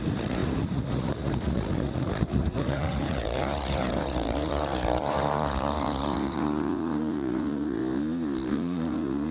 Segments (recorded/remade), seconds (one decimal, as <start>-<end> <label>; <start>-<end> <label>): 0.0-7.8 remade; 7.8-8.5 recorded; 8.5-9.3 remade